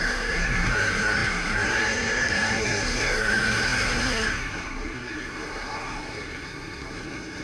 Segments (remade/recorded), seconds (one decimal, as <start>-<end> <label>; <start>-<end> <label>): 0.0-7.4 remade